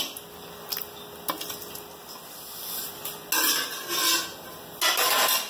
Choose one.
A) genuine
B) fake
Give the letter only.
A